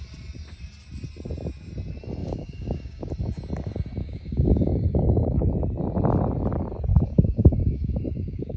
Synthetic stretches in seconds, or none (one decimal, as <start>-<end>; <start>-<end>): 2.2-3.1; 4.0-5.5; 6.9-8.6

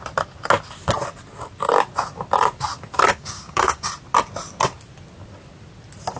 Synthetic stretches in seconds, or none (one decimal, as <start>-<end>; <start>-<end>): 3.1-3.9

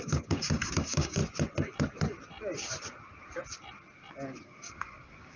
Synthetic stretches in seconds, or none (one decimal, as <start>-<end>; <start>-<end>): 0.0-1.2; 4.4-5.4